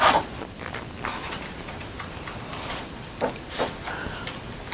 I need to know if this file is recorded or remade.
recorded